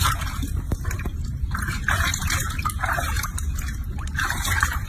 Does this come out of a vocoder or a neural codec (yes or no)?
yes